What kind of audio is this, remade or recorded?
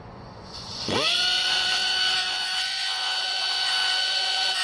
remade